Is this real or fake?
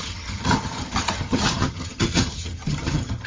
fake